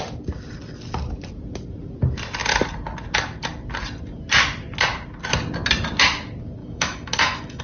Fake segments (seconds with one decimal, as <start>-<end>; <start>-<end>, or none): 6.6-7.6

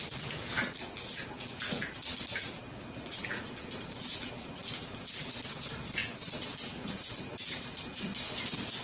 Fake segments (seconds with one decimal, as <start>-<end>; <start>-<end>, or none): 0.0-5.3; 6.0-8.0

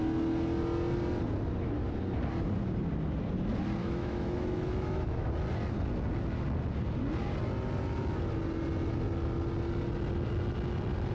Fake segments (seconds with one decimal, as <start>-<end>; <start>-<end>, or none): 3.8-5.3